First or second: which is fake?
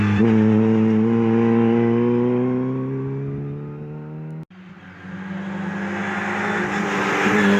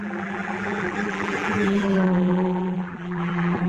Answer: second